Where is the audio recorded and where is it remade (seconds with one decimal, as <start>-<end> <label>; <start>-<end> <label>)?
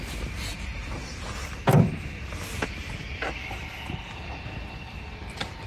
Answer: 0.0-3.4 recorded; 3.4-3.9 remade; 3.9-5.7 recorded